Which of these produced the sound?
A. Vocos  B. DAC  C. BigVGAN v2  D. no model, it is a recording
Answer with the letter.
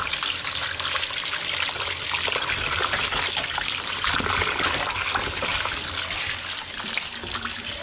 D